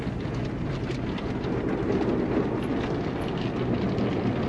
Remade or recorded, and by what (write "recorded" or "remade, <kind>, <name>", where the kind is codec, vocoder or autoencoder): recorded